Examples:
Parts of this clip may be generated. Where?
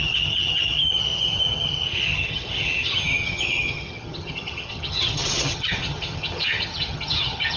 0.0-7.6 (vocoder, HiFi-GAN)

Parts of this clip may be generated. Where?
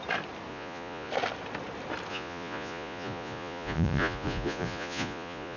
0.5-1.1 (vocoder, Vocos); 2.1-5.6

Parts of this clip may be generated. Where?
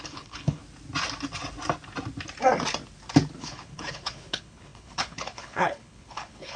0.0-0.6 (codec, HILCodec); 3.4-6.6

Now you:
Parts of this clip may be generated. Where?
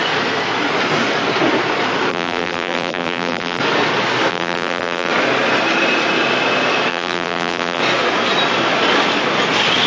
2.1-3.6 (vocoder, BigVGAN v2); 4.3-5.1; 6.9-7.8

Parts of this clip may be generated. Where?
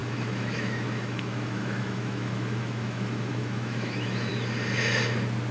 0.0-4.3 (autoencoder, DAC-VAE)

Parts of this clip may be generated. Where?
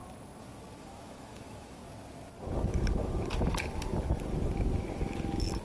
0.8-1.8 (autoencoder, DAC-VAE)